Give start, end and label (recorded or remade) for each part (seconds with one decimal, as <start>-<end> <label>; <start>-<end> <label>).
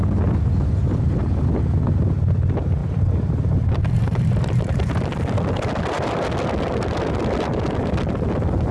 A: 0.0-2.8 recorded; 2.8-6.6 remade; 6.6-8.7 recorded